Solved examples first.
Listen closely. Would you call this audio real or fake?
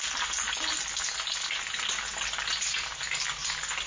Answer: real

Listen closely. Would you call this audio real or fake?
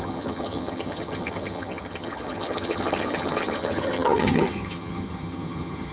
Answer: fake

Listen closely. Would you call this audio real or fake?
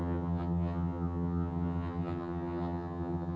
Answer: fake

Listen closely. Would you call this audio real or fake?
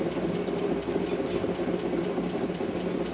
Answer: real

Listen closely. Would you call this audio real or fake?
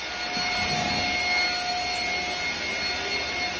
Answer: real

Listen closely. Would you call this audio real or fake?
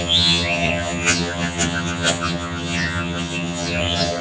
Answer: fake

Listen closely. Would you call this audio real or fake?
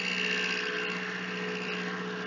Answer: real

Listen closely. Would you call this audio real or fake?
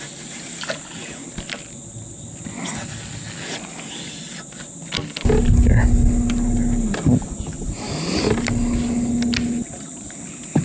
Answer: real